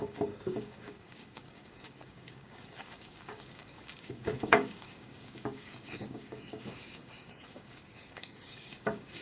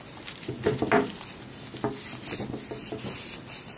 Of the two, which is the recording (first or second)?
second